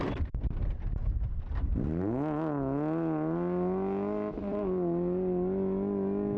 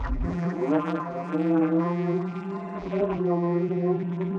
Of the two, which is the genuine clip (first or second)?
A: first